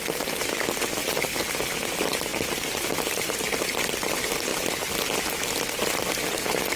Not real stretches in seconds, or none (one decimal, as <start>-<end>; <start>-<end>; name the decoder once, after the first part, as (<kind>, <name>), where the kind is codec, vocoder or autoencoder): 1.0-1.5 (vocoder, BigVGAN v2); 2.3-3.4